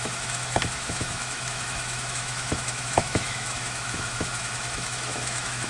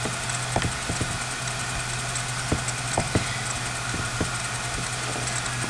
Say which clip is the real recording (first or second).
second